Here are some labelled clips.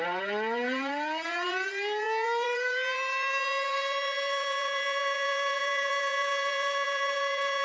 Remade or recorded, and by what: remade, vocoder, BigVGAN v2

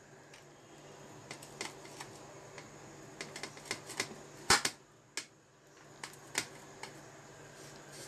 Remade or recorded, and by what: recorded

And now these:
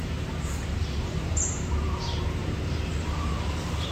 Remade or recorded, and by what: remade, vocoder, BigVGAN v2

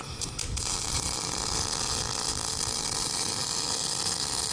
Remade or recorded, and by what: recorded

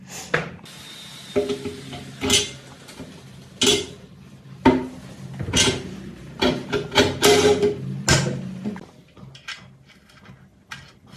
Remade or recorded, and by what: recorded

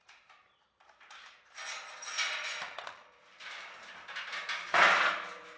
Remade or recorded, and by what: remade, vocoder, BigVGAN v2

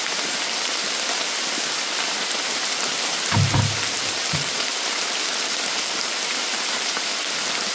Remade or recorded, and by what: recorded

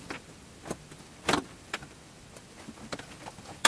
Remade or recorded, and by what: remade, vocoder, BigVGAN v2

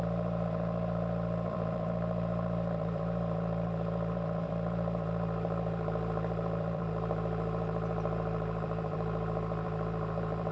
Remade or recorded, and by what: remade, vocoder, BigVGAN v2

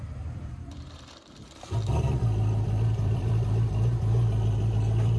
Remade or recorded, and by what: remade, vocoder, BigVGAN v2